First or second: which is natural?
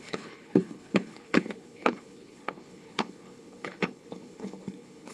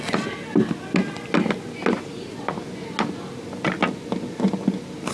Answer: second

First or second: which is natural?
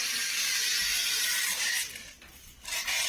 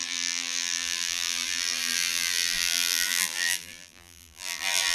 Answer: first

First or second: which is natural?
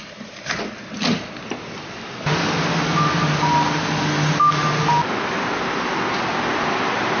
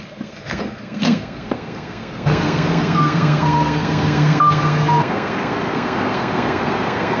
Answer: first